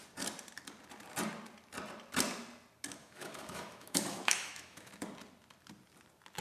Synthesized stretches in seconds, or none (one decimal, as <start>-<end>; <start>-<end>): 3.0-4.9